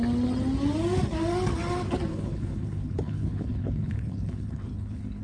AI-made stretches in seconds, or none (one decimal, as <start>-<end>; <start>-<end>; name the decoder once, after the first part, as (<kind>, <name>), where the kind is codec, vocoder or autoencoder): 2.1-5.2 (codec, HILCodec)